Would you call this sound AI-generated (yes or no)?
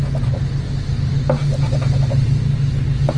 no